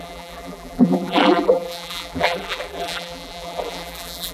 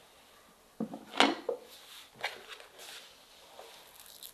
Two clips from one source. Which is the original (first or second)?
second